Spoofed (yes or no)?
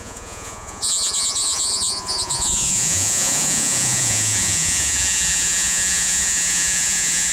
yes